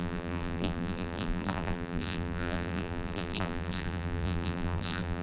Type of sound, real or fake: fake